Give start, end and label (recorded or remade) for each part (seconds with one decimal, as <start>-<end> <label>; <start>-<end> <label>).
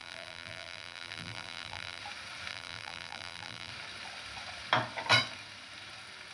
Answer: 0.0-2.0 remade; 2.0-2.5 recorded; 2.5-3.7 remade; 3.7-6.3 recorded